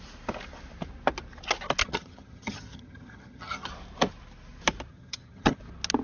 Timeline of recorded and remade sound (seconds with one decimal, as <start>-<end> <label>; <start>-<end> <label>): 0.0-1.8 recorded; 1.8-3.7 remade; 3.7-4.9 recorded; 4.9-5.6 remade; 5.6-6.0 recorded